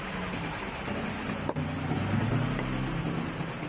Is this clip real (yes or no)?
yes